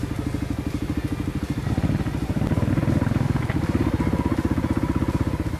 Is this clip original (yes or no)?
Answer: yes